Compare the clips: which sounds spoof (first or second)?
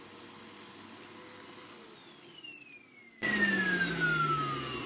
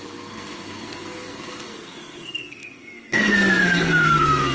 second